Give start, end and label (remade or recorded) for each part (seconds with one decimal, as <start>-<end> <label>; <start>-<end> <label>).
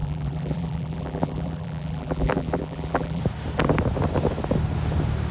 0.0-3.2 remade; 3.2-5.3 recorded